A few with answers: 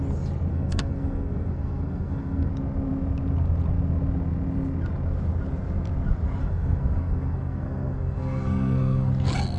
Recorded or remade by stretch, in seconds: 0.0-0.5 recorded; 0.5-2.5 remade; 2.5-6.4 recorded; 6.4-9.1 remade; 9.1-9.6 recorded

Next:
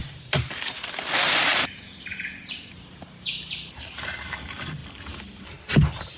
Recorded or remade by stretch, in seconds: 0.0-0.6 remade; 0.6-1.5 recorded; 1.5-3.7 remade; 3.7-6.2 recorded

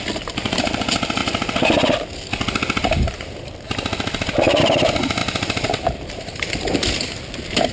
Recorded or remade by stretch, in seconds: 0.0-1.2 remade; 1.2-4.6 recorded; 4.6-7.7 remade